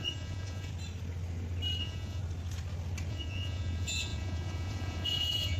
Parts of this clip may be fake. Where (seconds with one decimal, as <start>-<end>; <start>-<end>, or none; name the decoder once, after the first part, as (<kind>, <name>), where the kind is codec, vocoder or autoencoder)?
0.0-0.7 (vocoder, Vocos); 1.8-2.2; 3.1-5.6